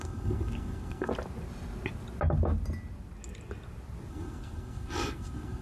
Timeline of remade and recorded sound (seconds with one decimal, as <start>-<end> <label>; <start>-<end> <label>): 0.0-1.1 remade; 1.1-4.1 recorded; 4.1-5.6 remade